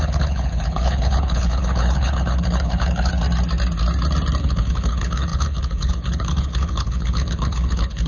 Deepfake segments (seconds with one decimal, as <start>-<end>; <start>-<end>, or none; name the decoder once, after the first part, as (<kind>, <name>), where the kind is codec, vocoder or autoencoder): 0.0-3.1 (codec, HILCodec); 4.4-8.1